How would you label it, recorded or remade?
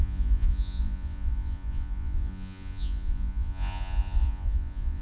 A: remade